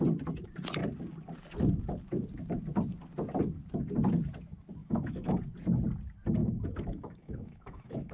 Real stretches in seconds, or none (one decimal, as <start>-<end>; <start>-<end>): 0.0-4.8; 5.4-6.4